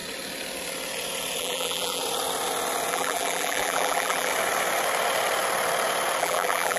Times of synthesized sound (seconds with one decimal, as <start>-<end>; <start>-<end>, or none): 1.4-2.0; 2.9-4.3; 6.2-6.8